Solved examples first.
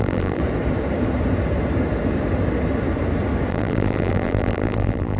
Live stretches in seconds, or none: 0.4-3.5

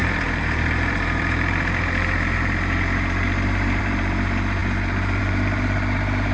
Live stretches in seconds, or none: none

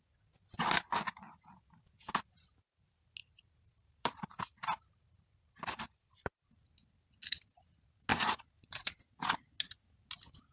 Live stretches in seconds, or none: 0.0-3.2; 6.5-8.1; 8.9-10.5

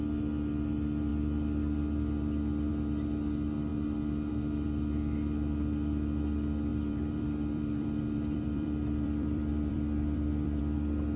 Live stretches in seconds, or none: 0.0-6.7; 10.6-11.2